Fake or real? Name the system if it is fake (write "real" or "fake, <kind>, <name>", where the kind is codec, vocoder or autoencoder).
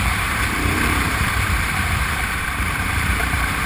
fake, vocoder, BigVGAN v2